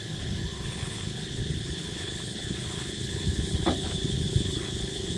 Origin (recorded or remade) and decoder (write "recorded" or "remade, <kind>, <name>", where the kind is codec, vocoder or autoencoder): remade, codec, HILCodec